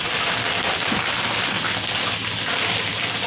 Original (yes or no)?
yes